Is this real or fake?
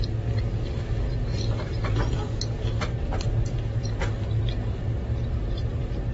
real